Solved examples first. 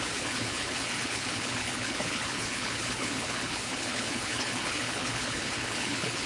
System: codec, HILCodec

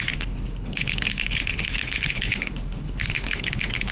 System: codec, HILCodec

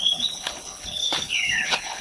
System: codec, HILCodec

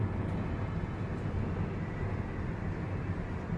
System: none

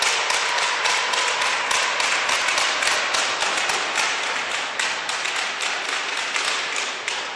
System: none